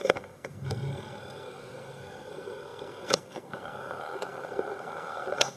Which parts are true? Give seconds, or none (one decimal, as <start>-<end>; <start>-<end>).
none